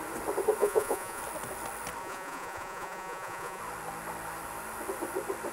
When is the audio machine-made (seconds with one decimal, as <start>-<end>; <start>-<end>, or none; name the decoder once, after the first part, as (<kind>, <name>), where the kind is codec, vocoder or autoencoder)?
0.6-1.2 (vocoder, Vocos); 2.0-3.6